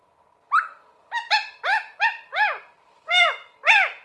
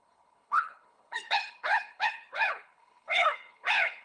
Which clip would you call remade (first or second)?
second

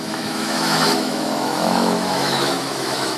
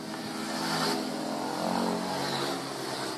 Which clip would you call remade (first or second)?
first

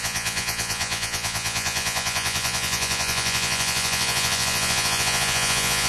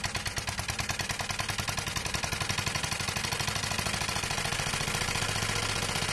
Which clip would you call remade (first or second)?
first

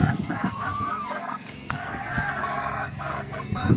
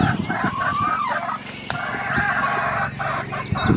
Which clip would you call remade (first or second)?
first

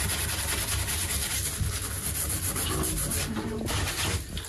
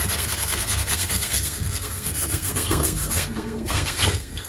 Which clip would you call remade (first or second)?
second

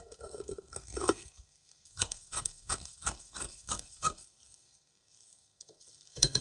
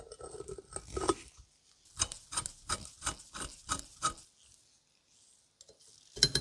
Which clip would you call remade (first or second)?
first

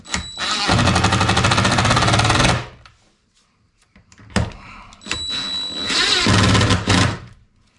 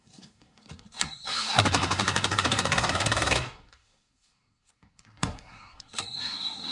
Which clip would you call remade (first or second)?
second